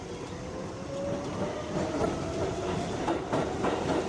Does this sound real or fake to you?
real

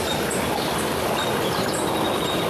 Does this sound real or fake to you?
real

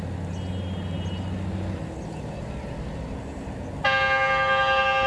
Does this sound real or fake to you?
real